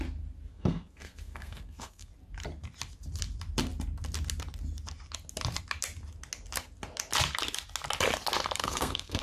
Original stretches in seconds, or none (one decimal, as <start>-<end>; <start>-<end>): 0.0-0.5; 2.1-8.6